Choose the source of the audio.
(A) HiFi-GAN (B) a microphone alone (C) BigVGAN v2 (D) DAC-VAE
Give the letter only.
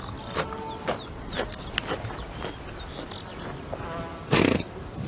B